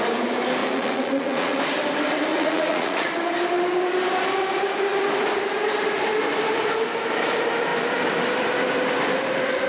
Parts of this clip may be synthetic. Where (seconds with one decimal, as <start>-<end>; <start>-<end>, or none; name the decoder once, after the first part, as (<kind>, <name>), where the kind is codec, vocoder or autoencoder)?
0.6-1.6 (vocoder, Vocos); 2.3-3.1